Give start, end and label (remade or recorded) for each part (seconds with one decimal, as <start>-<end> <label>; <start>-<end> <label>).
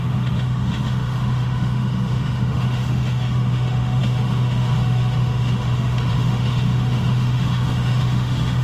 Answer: 0.0-8.6 remade